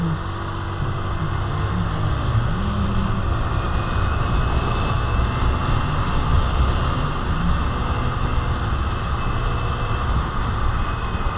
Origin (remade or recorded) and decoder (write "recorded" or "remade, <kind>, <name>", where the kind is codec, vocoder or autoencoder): recorded